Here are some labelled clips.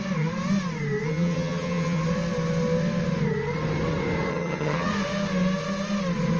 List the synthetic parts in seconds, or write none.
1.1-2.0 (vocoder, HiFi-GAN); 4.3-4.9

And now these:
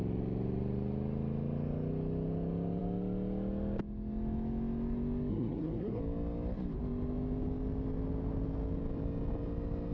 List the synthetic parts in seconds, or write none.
5.3-6.0 (codec, SNAC)